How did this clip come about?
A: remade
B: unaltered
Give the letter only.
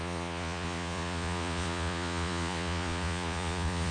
A